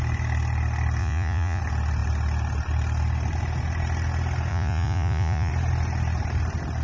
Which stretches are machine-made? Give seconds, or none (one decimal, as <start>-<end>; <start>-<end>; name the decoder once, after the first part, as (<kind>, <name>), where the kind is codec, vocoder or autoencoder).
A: 1.0-1.6 (vocoder, Vocos); 4.5-5.5